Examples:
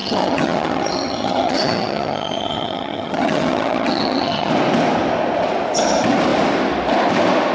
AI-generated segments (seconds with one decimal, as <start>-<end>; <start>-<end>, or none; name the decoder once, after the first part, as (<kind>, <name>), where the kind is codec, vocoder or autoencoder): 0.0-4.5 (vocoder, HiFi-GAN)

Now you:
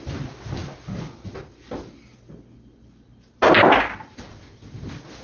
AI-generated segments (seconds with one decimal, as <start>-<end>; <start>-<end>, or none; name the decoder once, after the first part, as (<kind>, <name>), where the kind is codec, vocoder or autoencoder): none

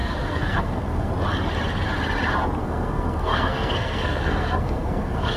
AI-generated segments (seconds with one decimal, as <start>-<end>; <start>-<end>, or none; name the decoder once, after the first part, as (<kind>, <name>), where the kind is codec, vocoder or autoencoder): 0.0-1.1 (codec, SNAC); 2.6-5.4

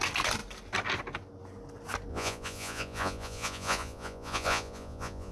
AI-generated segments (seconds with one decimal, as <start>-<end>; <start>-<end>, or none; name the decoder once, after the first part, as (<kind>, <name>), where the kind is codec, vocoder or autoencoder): 2.1-5.3 (vocoder, Vocos)

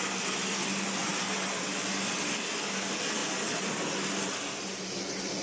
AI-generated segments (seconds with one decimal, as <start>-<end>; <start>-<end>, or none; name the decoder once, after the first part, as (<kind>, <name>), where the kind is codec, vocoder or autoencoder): none

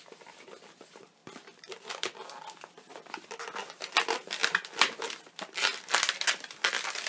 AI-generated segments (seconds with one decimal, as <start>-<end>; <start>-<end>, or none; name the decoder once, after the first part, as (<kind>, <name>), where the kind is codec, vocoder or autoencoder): 0.0-4.4 (vocoder, BigVGAN v2); 5.0-5.7

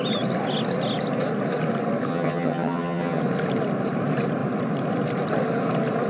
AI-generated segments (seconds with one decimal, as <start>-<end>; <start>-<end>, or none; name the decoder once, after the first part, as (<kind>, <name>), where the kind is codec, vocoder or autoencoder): 2.1-3.2 (vocoder, HiFi-GAN)